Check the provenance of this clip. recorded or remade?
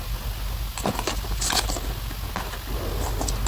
recorded